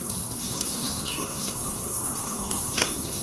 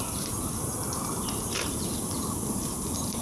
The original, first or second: second